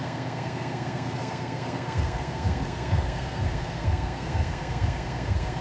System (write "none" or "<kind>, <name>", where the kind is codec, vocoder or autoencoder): codec, SNAC